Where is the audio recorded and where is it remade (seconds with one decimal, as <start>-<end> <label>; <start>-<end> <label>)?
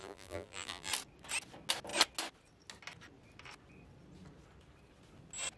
0.0-0.9 remade; 0.9-5.6 recorded